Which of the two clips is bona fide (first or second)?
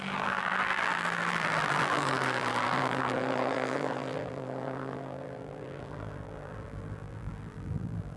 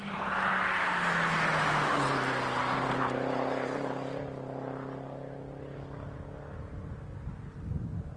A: second